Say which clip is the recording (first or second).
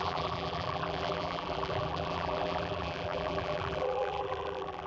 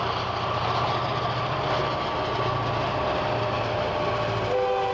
second